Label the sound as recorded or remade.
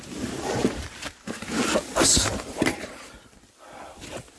recorded